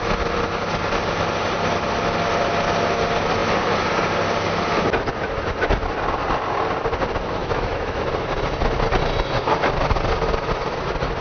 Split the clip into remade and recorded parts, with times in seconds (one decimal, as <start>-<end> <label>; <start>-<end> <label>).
0.0-7.4 recorded; 7.4-8.0 remade; 8.0-11.2 recorded